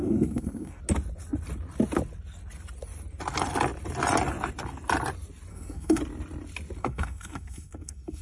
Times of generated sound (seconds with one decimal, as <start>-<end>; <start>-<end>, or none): 0.0-0.8; 5.5-6.0; 6.8-8.2